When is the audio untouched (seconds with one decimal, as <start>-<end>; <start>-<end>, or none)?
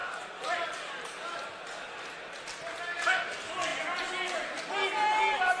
0.0-5.6